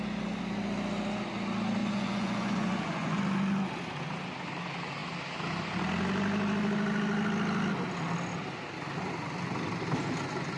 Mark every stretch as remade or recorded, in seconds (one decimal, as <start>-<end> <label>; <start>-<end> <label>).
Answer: 0.0-1.8 recorded; 1.8-3.2 remade; 3.2-10.6 recorded

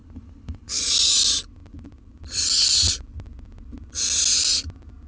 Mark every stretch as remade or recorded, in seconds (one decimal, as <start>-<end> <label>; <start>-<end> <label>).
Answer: 0.0-0.8 remade; 0.8-5.1 recorded

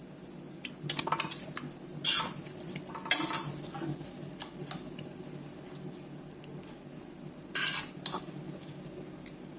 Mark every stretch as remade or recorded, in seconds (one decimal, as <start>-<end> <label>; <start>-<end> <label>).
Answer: 0.0-9.6 recorded

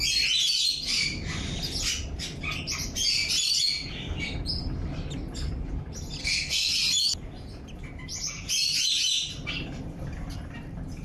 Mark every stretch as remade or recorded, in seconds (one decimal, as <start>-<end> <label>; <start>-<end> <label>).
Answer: 0.0-6.2 recorded; 6.2-6.7 remade; 6.7-11.0 recorded